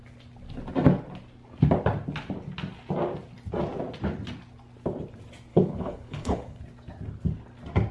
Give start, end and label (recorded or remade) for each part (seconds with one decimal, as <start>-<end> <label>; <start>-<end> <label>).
0.0-5.5 recorded; 5.5-6.6 remade; 6.6-7.9 recorded